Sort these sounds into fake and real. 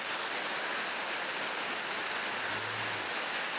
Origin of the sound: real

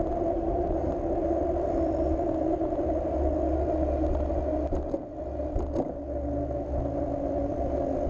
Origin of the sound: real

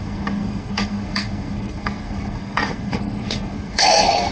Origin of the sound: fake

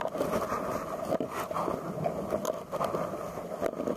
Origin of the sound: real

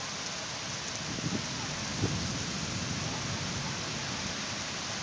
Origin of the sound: real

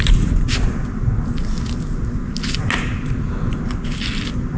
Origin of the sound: real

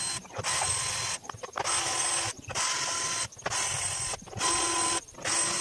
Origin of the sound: real